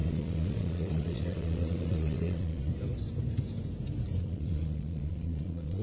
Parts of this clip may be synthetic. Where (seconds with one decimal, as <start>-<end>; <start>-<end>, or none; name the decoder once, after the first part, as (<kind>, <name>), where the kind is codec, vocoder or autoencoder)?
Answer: 0.0-2.7 (vocoder, Vocos); 4.2-5.8